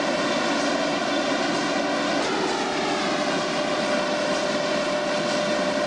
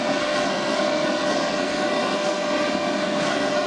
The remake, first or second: second